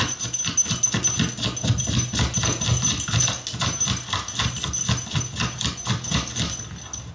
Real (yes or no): yes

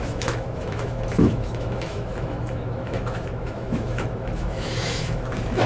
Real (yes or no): no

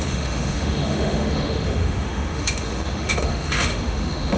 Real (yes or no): no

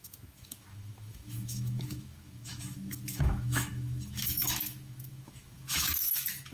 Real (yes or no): no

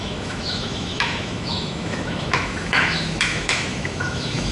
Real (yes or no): no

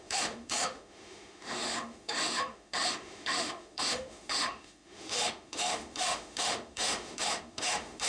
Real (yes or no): no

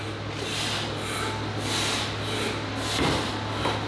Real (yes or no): yes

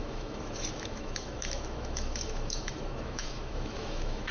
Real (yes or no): no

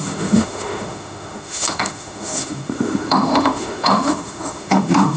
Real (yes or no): no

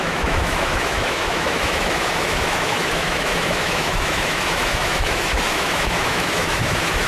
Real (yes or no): no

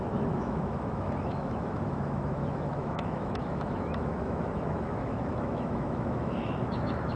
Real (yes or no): no